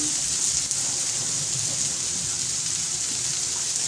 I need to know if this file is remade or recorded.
recorded